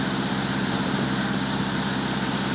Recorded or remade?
recorded